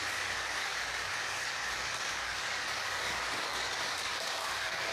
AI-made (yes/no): yes